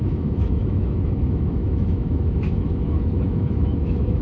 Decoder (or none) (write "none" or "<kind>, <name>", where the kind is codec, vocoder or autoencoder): autoencoder, DAC-VAE